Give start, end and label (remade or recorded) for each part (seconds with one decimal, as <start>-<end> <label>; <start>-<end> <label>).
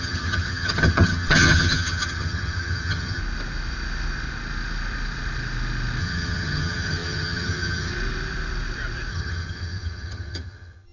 0.0-3.2 remade; 3.2-6.0 recorded; 6.0-7.9 remade; 7.9-9.1 recorded; 9.1-10.9 remade